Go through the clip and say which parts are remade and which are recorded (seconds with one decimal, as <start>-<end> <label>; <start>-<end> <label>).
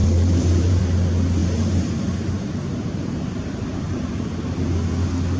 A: 0.0-0.8 remade; 0.8-1.4 recorded; 1.4-4.6 remade; 4.6-5.4 recorded